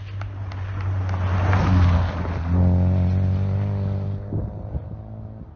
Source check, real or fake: real